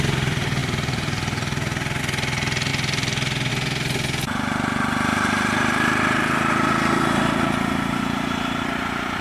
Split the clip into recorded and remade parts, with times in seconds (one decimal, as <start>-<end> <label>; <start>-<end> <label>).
0.0-0.6 recorded; 0.6-2.0 remade; 2.0-9.2 recorded